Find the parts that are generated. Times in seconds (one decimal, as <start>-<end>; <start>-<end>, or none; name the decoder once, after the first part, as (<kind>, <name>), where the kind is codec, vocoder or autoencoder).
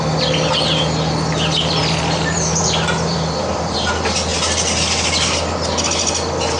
1.8-3.9 (vocoder, BigVGAN v2)